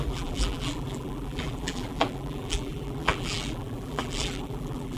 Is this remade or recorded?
remade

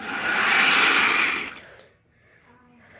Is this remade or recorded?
remade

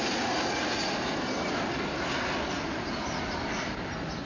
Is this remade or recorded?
recorded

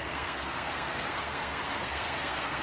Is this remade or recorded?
remade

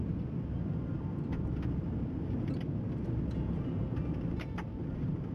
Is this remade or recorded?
recorded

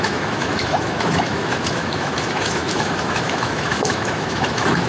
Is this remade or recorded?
remade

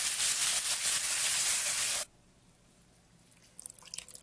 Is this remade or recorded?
recorded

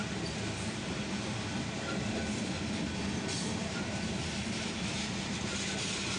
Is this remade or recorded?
remade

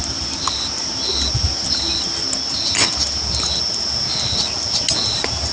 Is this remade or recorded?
recorded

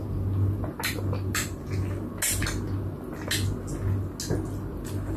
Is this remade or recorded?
recorded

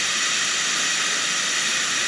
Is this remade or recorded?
recorded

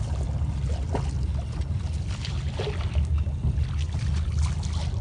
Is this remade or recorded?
recorded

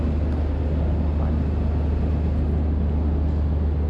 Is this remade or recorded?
recorded